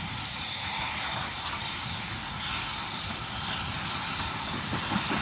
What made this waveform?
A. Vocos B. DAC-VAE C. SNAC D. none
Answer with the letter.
D